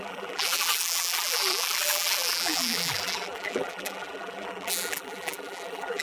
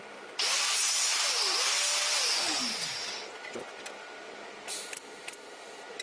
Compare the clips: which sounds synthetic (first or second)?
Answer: first